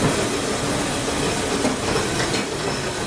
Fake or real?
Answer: real